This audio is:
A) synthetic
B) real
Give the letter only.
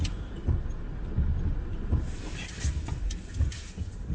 B